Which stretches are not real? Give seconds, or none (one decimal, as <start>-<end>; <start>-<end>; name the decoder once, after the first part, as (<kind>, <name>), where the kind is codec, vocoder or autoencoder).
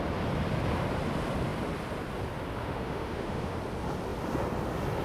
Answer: 2.6-3.6 (autoencoder, DAC-VAE)